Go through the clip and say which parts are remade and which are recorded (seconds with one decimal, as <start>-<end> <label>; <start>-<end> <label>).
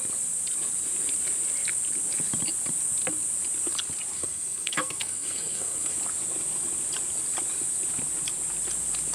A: 0.0-4.2 recorded; 4.2-5.9 remade; 5.9-9.1 recorded